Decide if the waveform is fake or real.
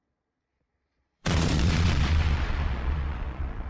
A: fake